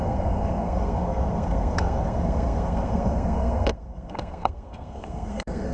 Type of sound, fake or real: fake